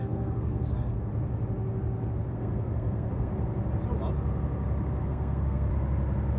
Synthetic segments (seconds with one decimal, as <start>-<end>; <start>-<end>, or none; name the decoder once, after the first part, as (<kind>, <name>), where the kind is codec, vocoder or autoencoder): 0.0-1.1 (codec, SNAC); 2.3-3.3; 5.0-5.7